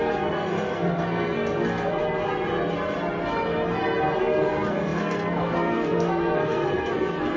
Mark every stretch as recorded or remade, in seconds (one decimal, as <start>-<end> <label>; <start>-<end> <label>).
0.0-2.0 remade; 2.0-4.2 recorded; 4.2-7.4 remade